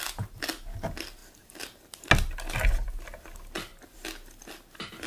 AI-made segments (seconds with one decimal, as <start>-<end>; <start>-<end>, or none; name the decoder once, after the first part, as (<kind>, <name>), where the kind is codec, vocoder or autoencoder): none